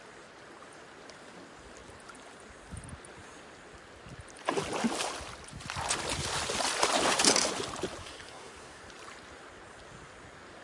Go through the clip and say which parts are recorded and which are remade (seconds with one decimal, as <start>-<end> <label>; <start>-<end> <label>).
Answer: 0.0-8.0 recorded; 8.0-8.8 remade; 8.8-10.6 recorded